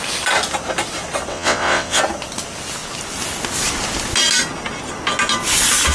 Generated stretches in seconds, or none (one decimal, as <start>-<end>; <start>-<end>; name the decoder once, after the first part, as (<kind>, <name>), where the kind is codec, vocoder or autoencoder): 1.3-2.0 (vocoder, WaveNeXt)